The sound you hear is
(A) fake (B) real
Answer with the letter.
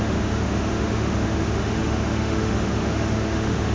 A